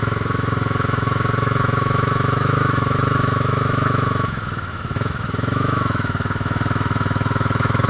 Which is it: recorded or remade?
remade